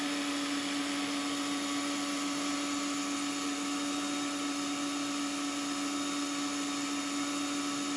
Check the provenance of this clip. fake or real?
real